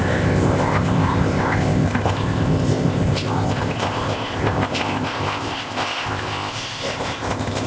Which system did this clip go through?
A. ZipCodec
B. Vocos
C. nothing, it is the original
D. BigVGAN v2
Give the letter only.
A